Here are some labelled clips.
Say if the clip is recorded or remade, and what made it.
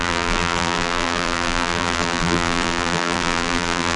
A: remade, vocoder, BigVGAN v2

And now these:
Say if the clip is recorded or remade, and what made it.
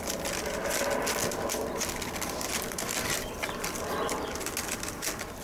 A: recorded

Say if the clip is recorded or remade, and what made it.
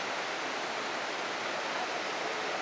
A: recorded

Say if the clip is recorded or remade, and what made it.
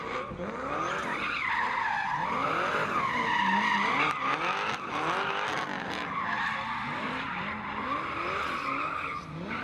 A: recorded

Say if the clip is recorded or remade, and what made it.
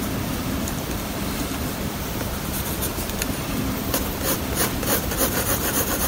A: remade, vocoder, BigVGAN v2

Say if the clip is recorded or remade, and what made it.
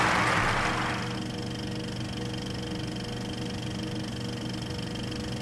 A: recorded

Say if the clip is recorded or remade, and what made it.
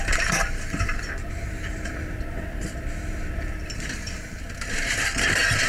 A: remade, vocoder, BigVGAN v2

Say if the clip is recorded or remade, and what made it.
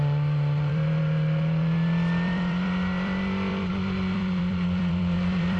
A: remade, vocoder, BigVGAN v2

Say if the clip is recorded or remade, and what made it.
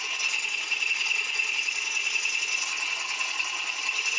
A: recorded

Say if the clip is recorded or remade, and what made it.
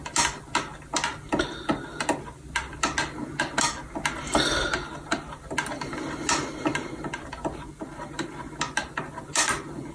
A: recorded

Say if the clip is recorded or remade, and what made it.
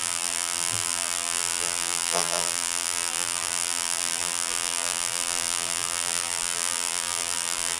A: remade, vocoder, BigVGAN v2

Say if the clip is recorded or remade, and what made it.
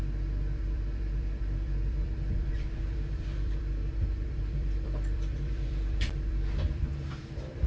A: remade, vocoder, BigVGAN v2